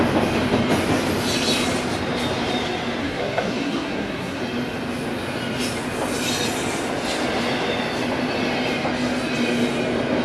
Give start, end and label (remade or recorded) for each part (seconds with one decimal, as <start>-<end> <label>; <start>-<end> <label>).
0.0-3.0 recorded; 3.0-4.4 remade; 4.4-10.2 recorded